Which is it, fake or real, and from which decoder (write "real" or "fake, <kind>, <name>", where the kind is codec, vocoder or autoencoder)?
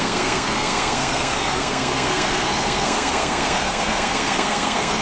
fake, codec, SNAC